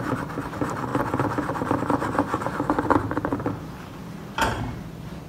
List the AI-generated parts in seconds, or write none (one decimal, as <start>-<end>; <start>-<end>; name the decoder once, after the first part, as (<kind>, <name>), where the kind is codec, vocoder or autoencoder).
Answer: 3.3-4.6 (vocoder, BigVGAN v2)